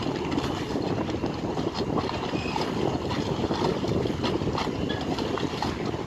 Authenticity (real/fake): real